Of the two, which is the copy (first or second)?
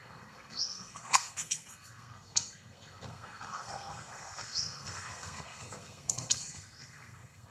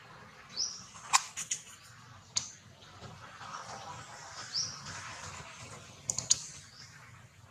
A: first